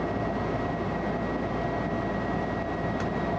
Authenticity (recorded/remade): recorded